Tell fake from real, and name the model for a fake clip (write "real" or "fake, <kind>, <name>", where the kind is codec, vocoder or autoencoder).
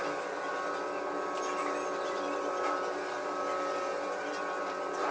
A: real